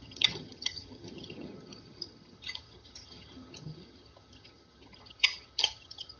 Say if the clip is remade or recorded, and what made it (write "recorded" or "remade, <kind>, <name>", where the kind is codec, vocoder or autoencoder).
remade, vocoder, HiFi-GAN